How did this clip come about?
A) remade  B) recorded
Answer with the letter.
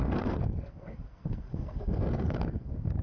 A